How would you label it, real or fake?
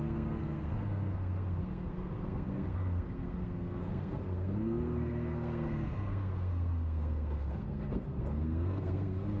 fake